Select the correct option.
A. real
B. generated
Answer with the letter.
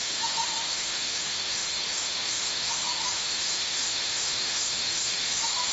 B